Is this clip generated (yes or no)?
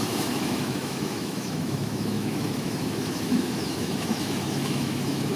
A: yes